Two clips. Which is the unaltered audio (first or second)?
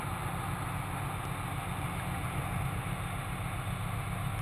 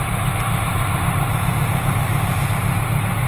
first